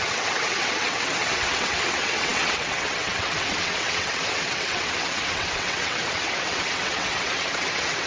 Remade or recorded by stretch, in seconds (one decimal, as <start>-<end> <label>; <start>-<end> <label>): 0.0-8.1 remade

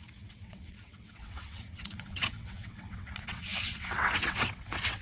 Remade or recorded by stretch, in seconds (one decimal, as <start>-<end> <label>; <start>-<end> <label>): 0.0-5.0 remade

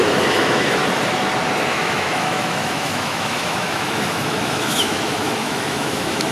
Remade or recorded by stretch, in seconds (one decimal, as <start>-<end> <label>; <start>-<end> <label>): 0.0-0.8 remade; 0.8-1.7 recorded; 1.7-6.3 remade

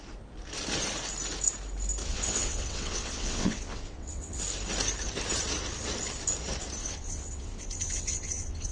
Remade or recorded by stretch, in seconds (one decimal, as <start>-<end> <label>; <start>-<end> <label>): 0.0-2.0 recorded; 2.0-4.4 remade; 4.4-6.8 recorded; 6.8-8.7 remade

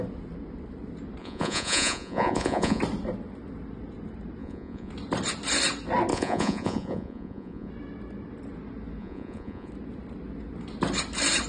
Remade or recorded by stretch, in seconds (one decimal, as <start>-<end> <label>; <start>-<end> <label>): 0.0-1.2 recorded; 1.2-2.8 remade; 2.8-4.4 recorded; 4.4-4.9 remade; 4.9-6.1 recorded; 6.1-7.7 remade; 7.7-9.0 recorded; 9.0-9.7 remade; 9.7-11.5 recorded

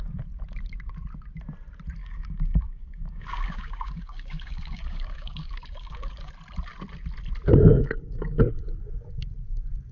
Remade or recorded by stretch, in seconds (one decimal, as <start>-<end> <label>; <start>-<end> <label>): 0.0-2.0 recorded; 2.0-6.3 remade; 6.3-7.7 recorded; 7.7-8.4 remade; 8.4-9.9 recorded

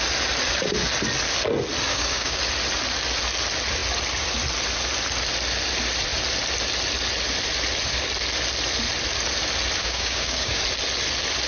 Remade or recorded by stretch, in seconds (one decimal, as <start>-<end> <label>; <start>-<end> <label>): 0.0-1.9 recorded; 1.9-2.4 remade; 2.4-9.8 recorded; 9.8-10.6 remade; 10.6-11.5 recorded

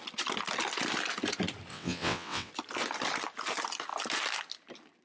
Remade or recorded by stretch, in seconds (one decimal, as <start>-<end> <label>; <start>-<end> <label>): 0.0-1.7 recorded; 1.7-2.5 remade; 2.5-5.0 recorded